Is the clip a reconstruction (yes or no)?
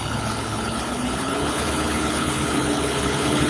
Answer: yes